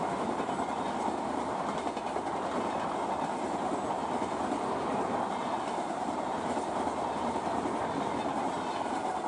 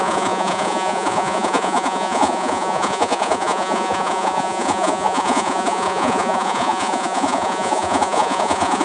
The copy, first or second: second